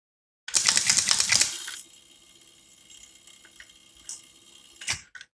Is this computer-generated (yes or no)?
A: no